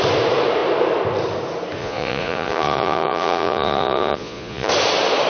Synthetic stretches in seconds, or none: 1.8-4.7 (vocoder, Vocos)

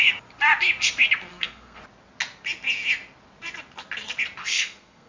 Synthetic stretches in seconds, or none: 1.3-1.8 (codec, SNAC); 4.4-5.1

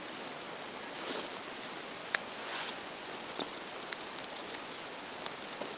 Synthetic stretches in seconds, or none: 2.0-3.5 (vocoder, Vocos); 4.4-4.9

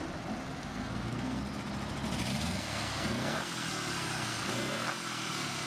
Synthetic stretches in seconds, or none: 0.7-1.4 (codec, SNAC); 2.3-5.7

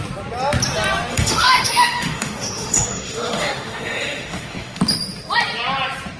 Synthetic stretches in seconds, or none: 1.1-4.8 (autoencoder, DAC-VAE)